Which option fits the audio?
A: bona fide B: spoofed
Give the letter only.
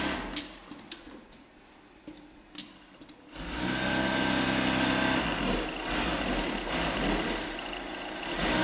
A